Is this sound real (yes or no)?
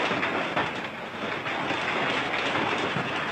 yes